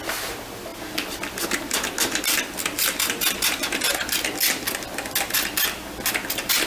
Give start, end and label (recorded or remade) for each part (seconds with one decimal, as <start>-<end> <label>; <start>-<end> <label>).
0.0-6.7 recorded